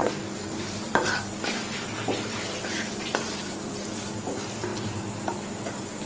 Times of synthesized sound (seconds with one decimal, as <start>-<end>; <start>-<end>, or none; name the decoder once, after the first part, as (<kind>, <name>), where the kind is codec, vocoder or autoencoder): 0.0-3.7 (vocoder, BigVGAN v2); 4.7-6.1